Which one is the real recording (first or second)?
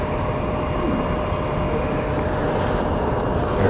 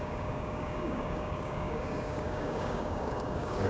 first